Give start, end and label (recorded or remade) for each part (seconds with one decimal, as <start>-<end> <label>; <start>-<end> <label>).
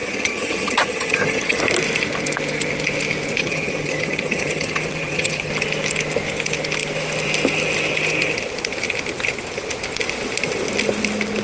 0.0-1.6 remade; 1.6-3.4 recorded; 3.4-5.5 remade; 5.5-11.4 recorded